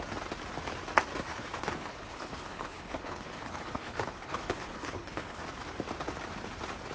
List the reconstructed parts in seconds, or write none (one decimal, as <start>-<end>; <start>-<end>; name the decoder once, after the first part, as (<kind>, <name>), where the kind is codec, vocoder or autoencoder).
1.3-5.4 (codec, HILCodec)